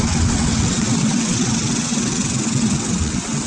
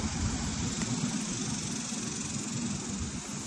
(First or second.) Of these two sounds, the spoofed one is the first